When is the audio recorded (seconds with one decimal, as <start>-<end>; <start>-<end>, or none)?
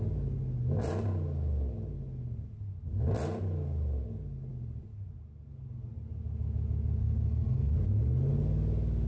0.0-7.0; 7.7-9.1